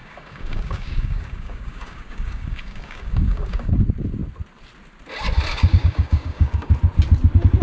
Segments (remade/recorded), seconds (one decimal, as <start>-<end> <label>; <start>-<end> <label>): 0.0-3.7 remade; 3.7-5.5 recorded; 5.5-6.7 remade; 6.7-7.6 recorded